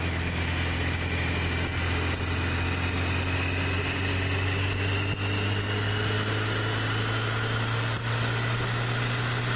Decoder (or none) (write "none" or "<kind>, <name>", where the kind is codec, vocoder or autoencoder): none